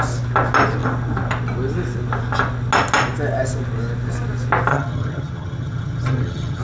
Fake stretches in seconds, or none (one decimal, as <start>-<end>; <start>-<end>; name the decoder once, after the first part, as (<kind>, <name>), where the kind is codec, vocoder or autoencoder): 4.7-6.6 (vocoder, HiFi-GAN)